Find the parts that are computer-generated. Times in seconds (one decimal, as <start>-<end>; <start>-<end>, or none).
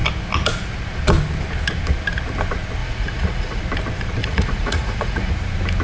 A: 2.8-3.6; 4.2-5.3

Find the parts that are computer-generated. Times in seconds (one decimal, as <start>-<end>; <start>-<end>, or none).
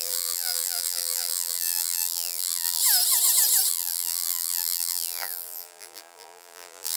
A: 0.0-2.8; 3.7-7.0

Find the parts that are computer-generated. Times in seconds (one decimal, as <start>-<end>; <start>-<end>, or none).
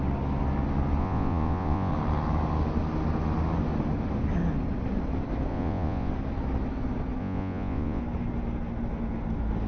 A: 1.0-1.9; 5.5-6.1; 7.2-8.0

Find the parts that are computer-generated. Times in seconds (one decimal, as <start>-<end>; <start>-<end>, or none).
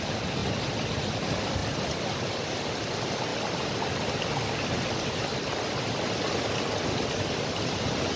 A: 0.0-0.4; 1.2-1.6; 2.4-3.3; 6.9-8.2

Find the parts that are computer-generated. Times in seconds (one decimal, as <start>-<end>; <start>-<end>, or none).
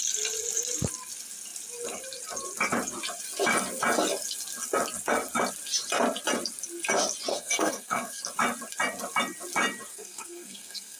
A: 7.3-8.2; 9.9-11.0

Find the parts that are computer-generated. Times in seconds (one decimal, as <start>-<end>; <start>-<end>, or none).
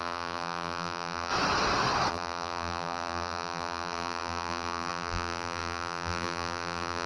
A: 0.0-1.3; 2.1-7.1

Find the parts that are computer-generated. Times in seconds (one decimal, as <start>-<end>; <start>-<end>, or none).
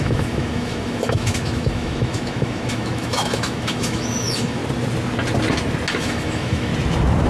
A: 0.0-4.6; 5.9-6.7